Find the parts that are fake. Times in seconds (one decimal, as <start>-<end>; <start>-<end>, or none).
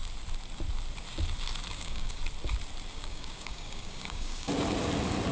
1.7-2.2; 2.9-4.5